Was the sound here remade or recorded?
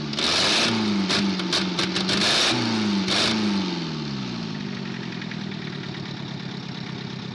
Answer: recorded